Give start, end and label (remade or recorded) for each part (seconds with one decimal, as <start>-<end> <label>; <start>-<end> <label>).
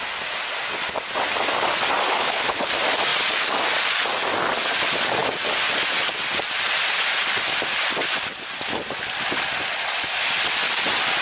0.0-2.1 recorded; 2.1-2.7 remade; 2.7-11.2 recorded